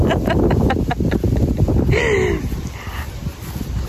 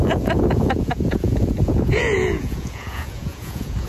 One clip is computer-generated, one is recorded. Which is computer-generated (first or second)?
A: second